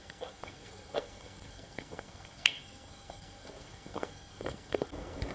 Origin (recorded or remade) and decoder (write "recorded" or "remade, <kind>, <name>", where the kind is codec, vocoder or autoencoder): remade, codec, SNAC